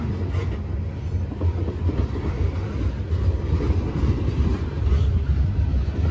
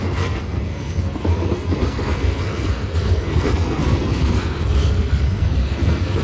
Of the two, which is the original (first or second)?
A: first